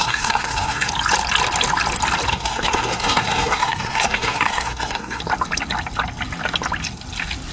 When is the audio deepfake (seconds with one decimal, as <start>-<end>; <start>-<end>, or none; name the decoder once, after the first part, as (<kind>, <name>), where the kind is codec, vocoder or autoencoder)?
0.0-0.9 (codec, SNAC); 2.3-5.2